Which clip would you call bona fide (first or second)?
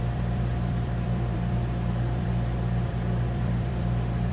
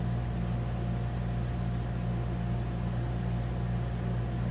second